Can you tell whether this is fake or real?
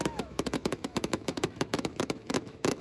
fake